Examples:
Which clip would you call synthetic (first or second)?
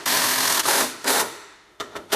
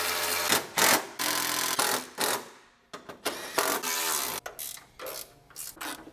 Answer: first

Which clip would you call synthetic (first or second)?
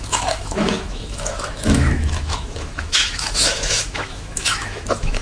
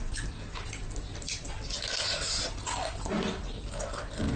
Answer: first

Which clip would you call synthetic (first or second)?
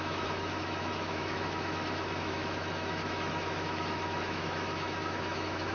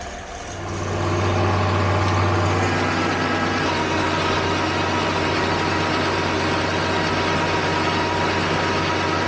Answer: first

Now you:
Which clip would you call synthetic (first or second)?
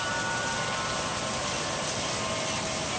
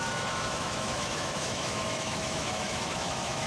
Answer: second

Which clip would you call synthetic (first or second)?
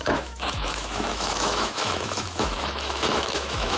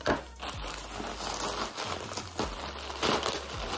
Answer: first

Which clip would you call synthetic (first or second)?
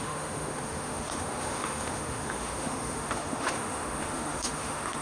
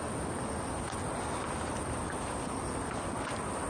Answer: first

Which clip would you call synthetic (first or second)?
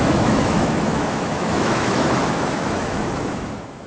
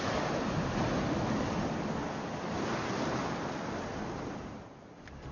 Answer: first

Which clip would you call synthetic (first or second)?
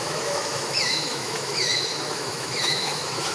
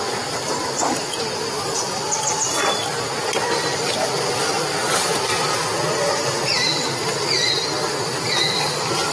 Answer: first